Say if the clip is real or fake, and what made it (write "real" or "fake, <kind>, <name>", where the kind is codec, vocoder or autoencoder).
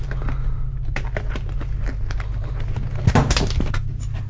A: real